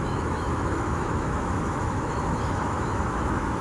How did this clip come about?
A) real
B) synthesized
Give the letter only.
B